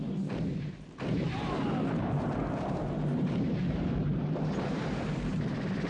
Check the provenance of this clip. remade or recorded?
remade